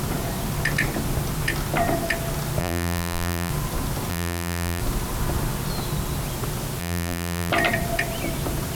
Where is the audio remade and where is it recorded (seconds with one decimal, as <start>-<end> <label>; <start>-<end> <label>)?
0.0-2.6 recorded; 2.6-3.5 remade; 3.5-4.1 recorded; 4.1-4.8 remade; 4.8-6.8 recorded; 6.8-7.5 remade; 7.5-8.7 recorded